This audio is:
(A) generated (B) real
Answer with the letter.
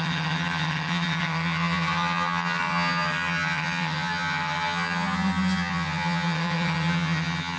A